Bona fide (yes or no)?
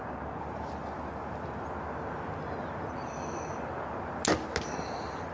yes